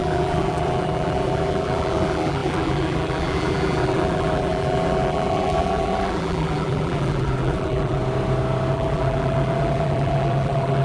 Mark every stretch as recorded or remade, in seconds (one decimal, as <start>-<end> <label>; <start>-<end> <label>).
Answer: 0.0-8.0 remade; 8.0-8.7 recorded; 8.7-10.8 remade